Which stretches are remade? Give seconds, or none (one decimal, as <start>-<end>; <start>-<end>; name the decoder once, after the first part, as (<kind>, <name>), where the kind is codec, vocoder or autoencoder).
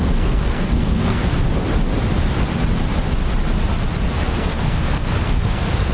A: 0.0-1.2 (codec, SNAC); 4.1-5.9